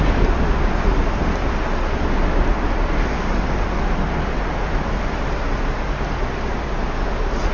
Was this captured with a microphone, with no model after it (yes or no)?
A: yes